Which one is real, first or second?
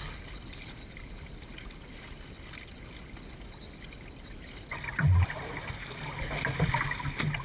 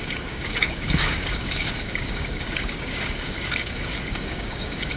first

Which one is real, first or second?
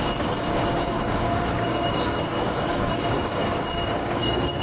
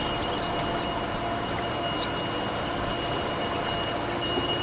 second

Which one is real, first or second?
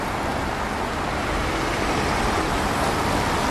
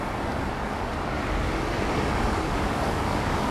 first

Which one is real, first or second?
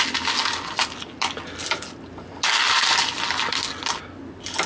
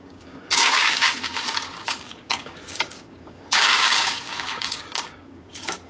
first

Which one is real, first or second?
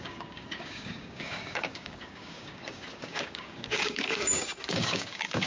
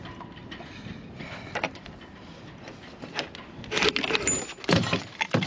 second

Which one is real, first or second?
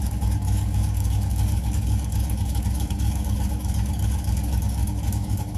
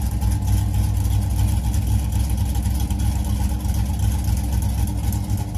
second